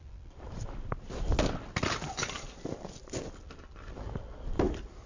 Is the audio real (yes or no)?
yes